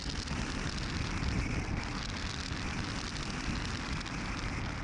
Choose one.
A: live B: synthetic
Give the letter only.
A